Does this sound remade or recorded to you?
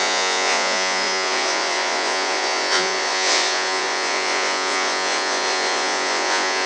remade